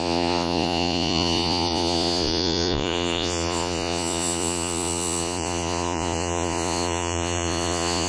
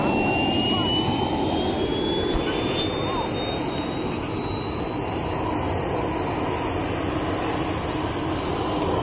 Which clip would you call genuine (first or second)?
second